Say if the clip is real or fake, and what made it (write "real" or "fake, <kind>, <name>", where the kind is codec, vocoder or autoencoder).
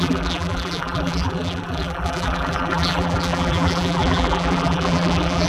fake, vocoder, BigVGAN v2